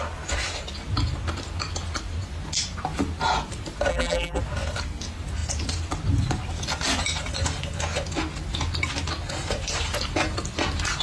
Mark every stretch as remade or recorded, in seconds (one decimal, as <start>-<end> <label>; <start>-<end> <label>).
0.0-3.9 recorded; 3.9-4.4 remade; 4.4-11.0 recorded